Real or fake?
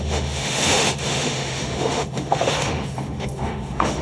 fake